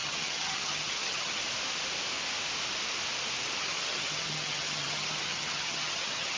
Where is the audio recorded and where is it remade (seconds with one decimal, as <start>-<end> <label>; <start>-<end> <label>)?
0.0-1.4 remade; 1.4-3.6 recorded; 3.6-6.4 remade